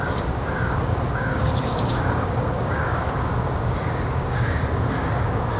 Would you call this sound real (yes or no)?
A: no